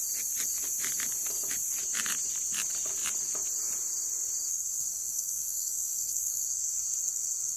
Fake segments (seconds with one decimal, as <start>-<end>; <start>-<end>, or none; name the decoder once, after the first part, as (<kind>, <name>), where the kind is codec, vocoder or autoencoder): 4.5-7.6 (codec, SNAC)

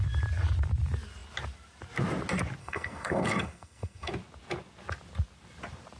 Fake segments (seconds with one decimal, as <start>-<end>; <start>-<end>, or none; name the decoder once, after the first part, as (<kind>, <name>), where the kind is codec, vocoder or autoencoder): 2.6-4.1 (codec, SNAC)

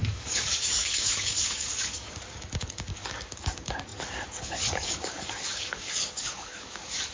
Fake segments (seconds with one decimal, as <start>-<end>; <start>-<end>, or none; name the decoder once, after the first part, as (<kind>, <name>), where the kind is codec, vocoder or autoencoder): 0.0-7.1 (codec, DAC)

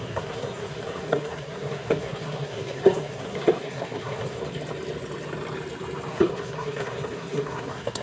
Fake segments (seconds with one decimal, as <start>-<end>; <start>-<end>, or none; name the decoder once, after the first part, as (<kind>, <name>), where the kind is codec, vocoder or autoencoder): 0.0-4.4 (codec, SNAC); 6.1-8.0

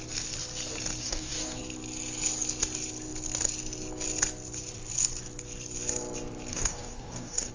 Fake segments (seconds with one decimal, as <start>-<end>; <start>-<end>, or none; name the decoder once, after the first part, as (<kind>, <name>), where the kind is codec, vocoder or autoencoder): 1.0-1.6 (codec, DAC); 6.5-7.5